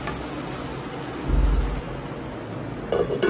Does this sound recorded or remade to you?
recorded